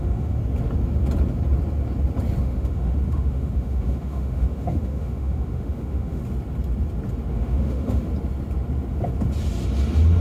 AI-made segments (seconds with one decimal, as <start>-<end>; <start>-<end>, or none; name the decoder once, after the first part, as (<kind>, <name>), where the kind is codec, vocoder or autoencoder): 0.0-0.4 (autoencoder, DAC-VAE); 2.4-6.2; 7.3-8.1